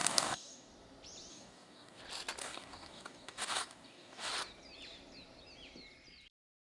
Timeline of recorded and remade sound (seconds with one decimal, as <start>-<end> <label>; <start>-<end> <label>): 0.0-0.7 remade; 0.7-1.3 recorded; 1.3-2.0 remade; 2.0-2.4 recorded; 2.4-4.3 remade; 4.3-6.7 recorded